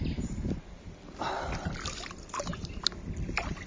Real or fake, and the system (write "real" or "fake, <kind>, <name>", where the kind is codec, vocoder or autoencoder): real